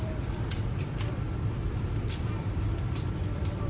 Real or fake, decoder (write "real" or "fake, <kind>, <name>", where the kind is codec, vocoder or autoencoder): fake, vocoder, BigVGAN v2